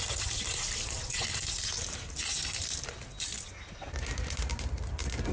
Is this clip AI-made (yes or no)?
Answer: no